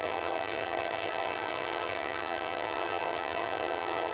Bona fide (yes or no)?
no